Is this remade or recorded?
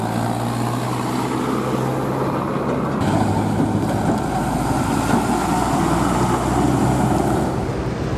recorded